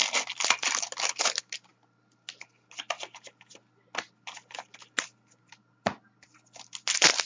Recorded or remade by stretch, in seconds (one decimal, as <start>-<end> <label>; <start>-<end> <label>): 0.0-7.3 recorded

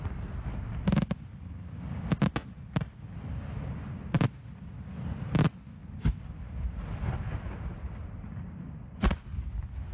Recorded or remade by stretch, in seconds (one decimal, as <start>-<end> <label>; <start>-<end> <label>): 0.0-9.9 recorded

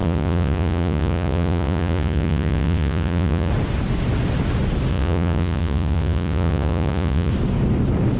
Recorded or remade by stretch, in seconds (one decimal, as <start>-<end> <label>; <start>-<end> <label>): 0.0-3.5 remade; 3.5-4.9 recorded; 4.9-7.3 remade; 7.3-8.2 recorded

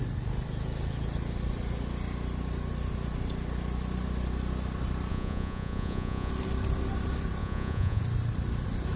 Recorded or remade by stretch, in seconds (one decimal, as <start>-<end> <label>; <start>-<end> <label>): 0.0-5.1 recorded; 5.1-6.3 remade; 6.3-7.4 recorded; 7.4-8.0 remade; 8.0-9.0 recorded

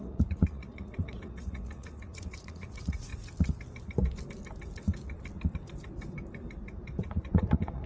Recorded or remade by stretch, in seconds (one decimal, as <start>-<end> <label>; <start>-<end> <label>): 0.0-3.1 remade; 3.1-7.0 recorded; 7.0-7.9 remade